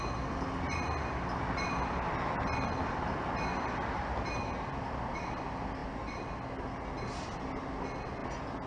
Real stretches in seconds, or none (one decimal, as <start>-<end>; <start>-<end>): 0.0-8.7